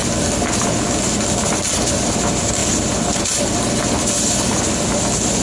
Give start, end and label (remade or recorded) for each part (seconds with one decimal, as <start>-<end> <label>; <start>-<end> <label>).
0.0-5.4 recorded